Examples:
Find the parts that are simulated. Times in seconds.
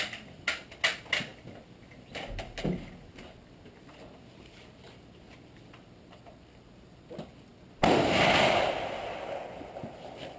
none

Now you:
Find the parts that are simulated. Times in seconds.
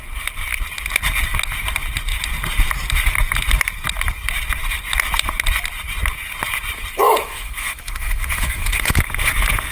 6.9-9.0 (autoencoder, DAC-VAE)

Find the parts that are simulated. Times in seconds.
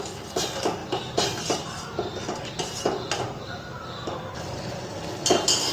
none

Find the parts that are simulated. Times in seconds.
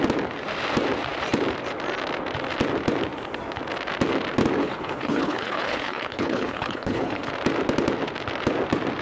4.6-7.3 (codec, HILCodec)